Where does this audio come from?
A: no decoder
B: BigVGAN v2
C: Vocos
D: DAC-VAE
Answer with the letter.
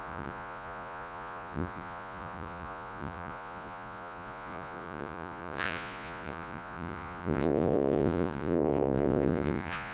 C